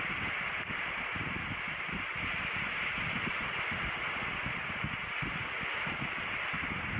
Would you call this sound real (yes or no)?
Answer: yes